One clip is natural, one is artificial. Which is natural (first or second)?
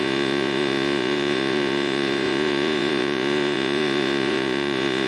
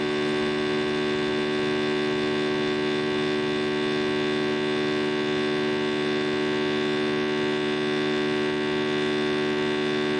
second